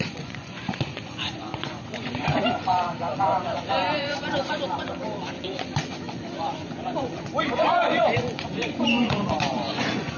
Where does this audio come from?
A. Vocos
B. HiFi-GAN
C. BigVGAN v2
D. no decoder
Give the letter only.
A